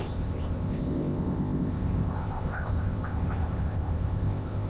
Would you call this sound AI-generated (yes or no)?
yes